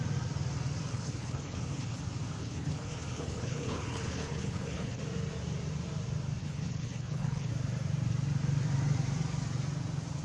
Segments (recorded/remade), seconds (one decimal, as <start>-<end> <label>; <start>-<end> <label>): 0.0-0.9 recorded; 0.9-2.0 remade; 2.0-2.4 recorded; 2.4-5.0 remade; 5.0-6.4 recorded; 6.4-7.5 remade; 7.5-10.2 recorded